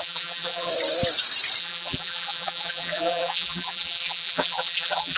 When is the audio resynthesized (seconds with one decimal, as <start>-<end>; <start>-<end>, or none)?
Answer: 0.0-0.7; 1.6-5.2